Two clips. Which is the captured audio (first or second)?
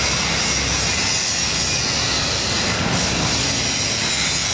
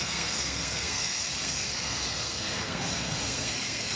first